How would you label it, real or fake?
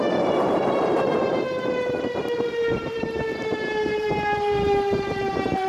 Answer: fake